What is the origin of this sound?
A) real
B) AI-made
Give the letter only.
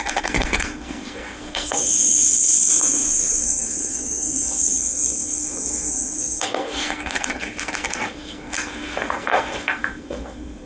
B